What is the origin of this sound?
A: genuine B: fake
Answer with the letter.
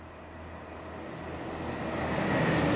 A